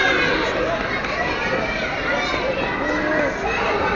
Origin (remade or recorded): recorded